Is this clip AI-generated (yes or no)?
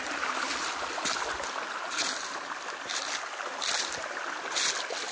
no